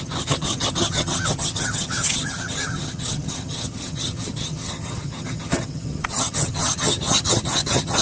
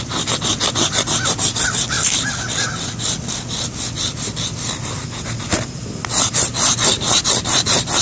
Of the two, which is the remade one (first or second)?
first